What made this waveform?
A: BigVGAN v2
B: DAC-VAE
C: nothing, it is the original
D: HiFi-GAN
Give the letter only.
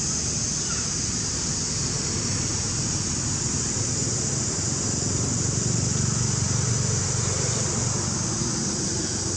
C